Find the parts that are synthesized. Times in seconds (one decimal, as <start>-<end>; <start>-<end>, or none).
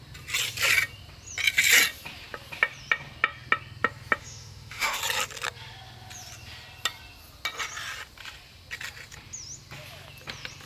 4.2-5.0